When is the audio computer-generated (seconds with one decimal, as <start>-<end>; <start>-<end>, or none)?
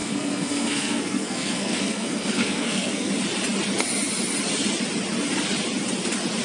0.0-3.1